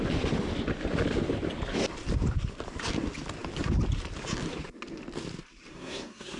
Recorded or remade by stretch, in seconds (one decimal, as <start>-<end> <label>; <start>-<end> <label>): 0.0-5.7 recorded; 5.7-6.4 remade